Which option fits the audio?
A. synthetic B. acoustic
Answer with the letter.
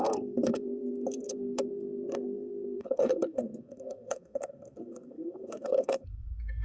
A